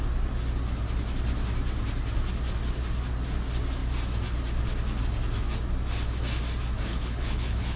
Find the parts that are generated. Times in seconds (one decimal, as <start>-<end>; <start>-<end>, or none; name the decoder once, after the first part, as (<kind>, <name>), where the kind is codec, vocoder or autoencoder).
6.9-7.8 (codec, HILCodec)